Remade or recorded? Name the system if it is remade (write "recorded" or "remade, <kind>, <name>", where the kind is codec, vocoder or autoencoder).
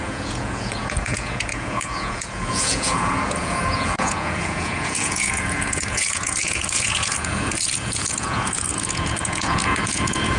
remade, vocoder, Vocos